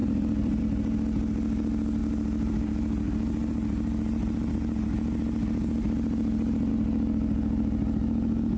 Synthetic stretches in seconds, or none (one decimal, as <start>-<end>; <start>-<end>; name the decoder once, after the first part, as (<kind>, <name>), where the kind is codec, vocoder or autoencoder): 0.0-0.6 (vocoder, BigVGAN v2); 2.0-6.7